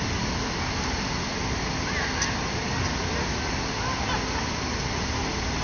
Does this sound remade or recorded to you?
recorded